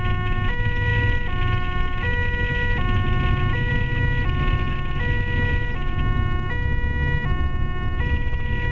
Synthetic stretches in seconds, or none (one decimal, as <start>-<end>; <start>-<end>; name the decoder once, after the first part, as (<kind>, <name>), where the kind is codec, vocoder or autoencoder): none